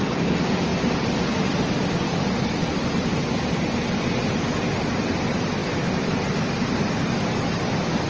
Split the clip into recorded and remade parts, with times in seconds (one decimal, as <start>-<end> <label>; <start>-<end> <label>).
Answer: 0.0-0.7 recorded; 0.7-2.3 remade; 2.3-8.1 recorded